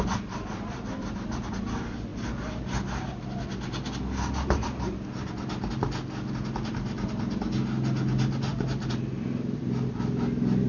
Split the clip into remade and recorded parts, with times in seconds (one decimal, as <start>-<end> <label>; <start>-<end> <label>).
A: 0.0-10.7 recorded